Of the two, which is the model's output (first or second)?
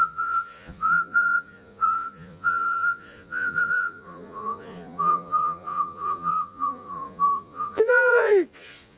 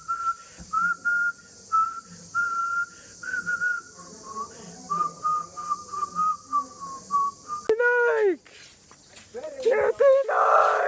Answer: first